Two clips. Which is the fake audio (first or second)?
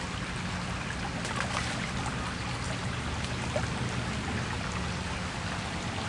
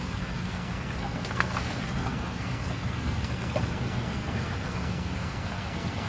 second